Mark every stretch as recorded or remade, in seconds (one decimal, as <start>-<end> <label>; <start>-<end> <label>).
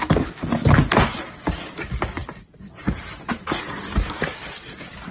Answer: 0.0-5.1 recorded